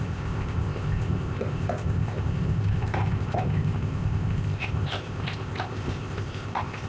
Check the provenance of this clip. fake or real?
fake